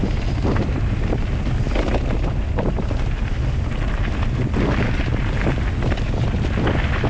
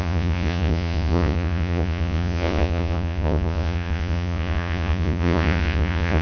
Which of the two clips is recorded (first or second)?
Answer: first